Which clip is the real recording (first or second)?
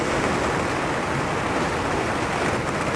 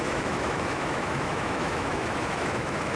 first